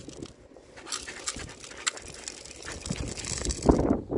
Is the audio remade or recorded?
recorded